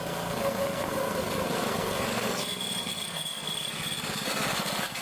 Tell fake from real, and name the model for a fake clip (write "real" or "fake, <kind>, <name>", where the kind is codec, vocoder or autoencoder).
fake, codec, SNAC